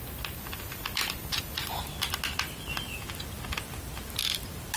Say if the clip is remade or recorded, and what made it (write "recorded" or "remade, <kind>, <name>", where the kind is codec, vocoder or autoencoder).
recorded